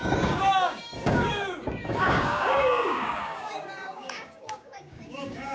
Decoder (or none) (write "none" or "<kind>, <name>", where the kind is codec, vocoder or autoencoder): codec, DAC